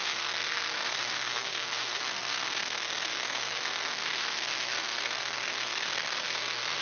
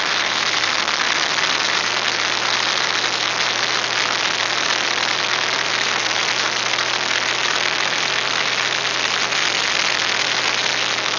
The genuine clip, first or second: second